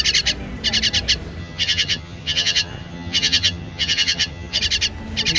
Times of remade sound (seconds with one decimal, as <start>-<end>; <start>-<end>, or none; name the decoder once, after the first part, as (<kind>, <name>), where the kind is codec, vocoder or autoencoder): 1.4-4.6 (vocoder, HiFi-GAN)